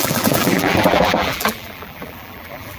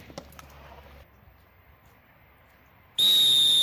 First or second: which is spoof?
first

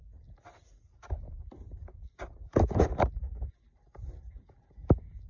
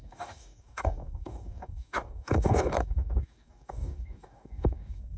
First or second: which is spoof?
second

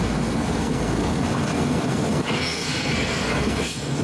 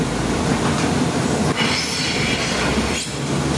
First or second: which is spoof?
first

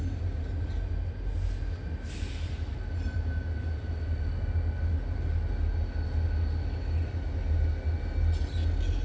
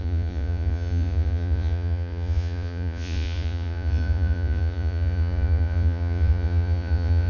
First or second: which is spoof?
second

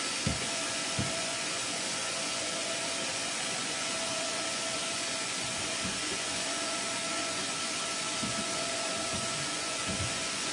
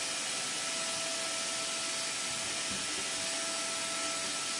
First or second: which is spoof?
first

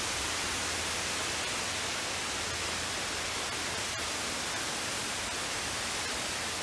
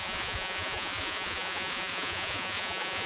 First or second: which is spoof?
second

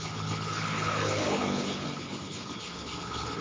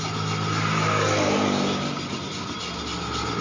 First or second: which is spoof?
first